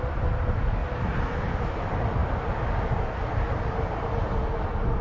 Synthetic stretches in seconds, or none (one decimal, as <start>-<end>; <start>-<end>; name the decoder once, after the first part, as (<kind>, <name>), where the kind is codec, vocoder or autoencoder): none